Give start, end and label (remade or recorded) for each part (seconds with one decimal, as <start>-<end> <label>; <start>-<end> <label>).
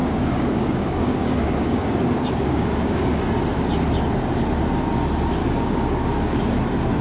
0.0-3.2 remade; 3.2-5.4 recorded; 5.4-6.4 remade; 6.4-7.0 recorded